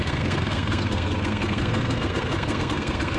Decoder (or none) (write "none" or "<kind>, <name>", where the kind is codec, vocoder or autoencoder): codec, SNAC